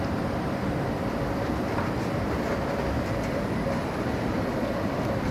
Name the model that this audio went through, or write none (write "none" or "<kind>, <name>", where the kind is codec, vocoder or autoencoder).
vocoder, BigVGAN v2